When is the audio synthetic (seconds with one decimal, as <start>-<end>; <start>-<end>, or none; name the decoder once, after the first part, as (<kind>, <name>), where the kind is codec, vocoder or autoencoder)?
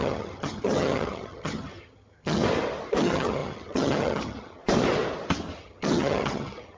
0.0-2.4 (vocoder, HiFi-GAN); 3.0-4.6; 5.6-6.8